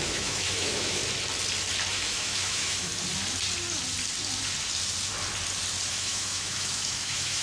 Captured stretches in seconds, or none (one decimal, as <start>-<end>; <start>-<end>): 1.0-1.9; 2.9-5.9